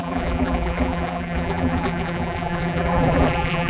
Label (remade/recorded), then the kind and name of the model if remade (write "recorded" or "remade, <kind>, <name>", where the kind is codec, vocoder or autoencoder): remade, vocoder, BigVGAN v2